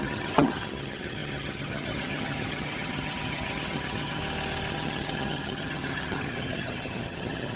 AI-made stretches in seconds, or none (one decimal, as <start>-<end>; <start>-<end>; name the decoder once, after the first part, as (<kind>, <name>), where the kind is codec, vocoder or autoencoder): 0.0-4.2 (vocoder, HiFi-GAN); 4.7-7.6